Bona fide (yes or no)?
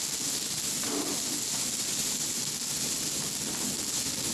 yes